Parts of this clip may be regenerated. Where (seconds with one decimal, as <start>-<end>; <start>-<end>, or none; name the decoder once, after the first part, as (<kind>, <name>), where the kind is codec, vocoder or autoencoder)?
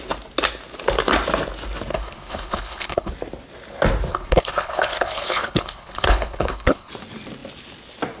1.9-3.1 (codec, HILCodec); 4.1-6.9